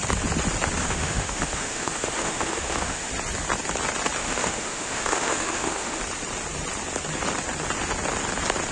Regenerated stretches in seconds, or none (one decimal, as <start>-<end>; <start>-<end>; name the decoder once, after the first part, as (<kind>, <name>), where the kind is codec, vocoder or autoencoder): 0.8-3.1 (autoencoder, DAC-VAE); 4.2-6.0